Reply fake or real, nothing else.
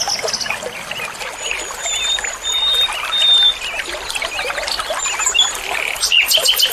real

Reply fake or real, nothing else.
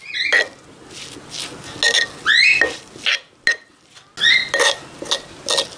real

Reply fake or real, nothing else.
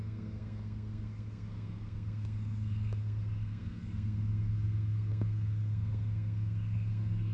fake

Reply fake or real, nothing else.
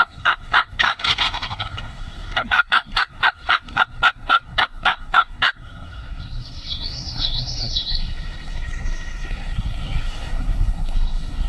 fake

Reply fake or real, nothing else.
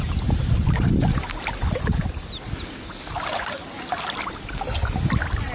real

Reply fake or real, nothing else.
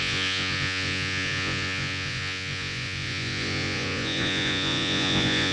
fake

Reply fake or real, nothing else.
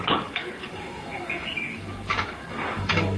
fake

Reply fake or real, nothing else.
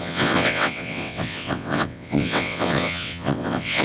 fake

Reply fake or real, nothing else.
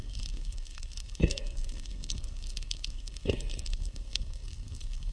fake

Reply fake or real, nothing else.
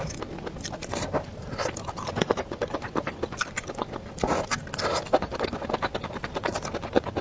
real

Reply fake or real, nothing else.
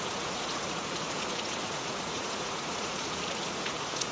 fake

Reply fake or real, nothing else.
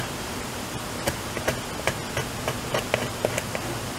real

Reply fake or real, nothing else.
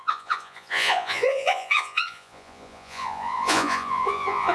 fake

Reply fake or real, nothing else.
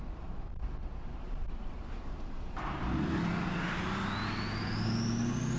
real